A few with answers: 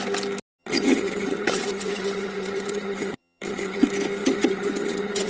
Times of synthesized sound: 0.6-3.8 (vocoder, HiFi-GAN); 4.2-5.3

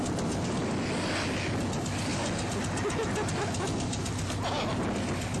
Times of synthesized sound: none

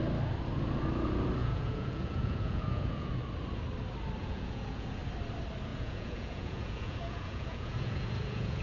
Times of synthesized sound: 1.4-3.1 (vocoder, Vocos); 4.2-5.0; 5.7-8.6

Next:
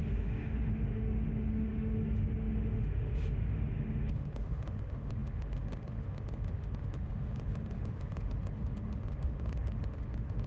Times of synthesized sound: 0.0-10.5 (autoencoder, DAC-VAE)